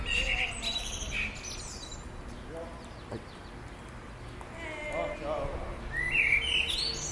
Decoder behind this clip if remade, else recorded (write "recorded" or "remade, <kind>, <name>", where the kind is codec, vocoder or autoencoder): recorded